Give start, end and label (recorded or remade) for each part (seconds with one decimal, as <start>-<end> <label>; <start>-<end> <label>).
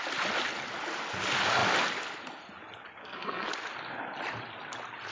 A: 0.0-3.0 recorded; 3.0-3.5 remade; 3.5-5.1 recorded